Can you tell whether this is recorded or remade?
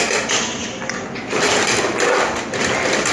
recorded